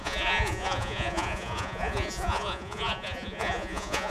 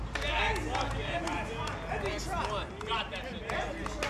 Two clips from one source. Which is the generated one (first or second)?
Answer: first